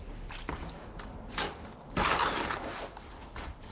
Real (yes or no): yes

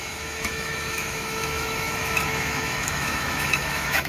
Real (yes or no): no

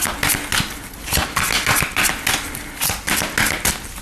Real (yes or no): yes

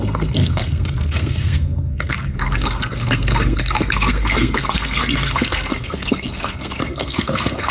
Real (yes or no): no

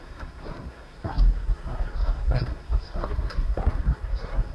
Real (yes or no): no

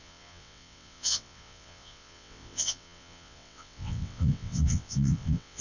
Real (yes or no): no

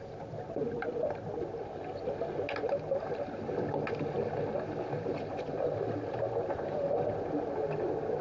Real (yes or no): yes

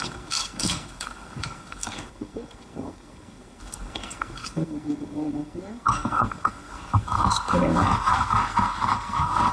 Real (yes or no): no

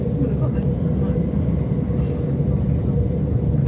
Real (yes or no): no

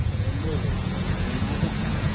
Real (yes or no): no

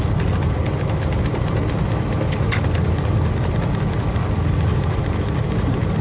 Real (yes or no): no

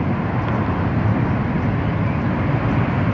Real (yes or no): yes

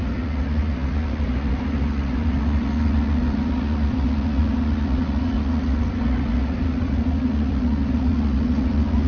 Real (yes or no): no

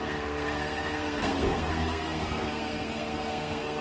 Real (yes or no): no